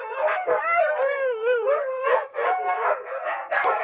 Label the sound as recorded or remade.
remade